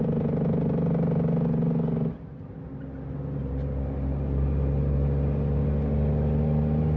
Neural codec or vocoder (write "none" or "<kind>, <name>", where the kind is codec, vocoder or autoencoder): none